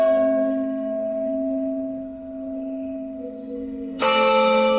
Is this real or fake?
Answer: fake